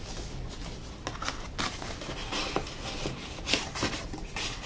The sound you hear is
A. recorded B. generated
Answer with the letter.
A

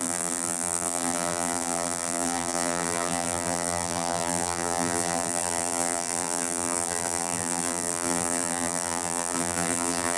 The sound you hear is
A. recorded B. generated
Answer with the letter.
B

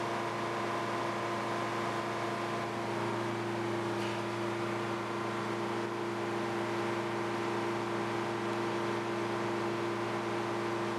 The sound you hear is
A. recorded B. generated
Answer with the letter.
A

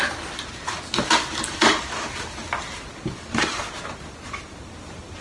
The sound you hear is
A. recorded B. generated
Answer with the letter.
A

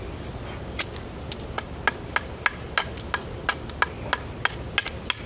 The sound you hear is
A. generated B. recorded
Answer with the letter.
B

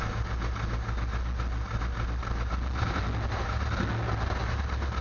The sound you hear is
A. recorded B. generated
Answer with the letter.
A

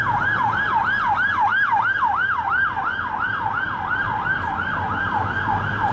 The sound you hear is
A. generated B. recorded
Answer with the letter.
B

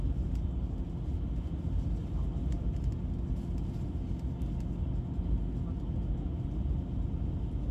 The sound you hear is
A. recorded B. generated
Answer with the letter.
A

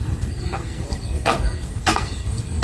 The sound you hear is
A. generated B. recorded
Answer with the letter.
A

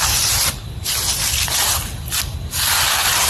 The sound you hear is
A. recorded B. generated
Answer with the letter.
A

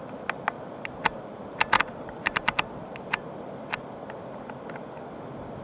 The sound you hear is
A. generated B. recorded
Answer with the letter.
B